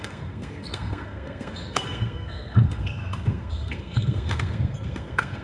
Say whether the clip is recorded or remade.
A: remade